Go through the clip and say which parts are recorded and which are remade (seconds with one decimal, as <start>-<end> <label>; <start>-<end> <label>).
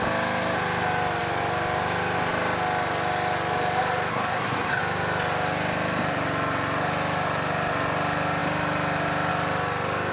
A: 0.0-4.1 recorded; 4.1-4.8 remade; 4.8-10.1 recorded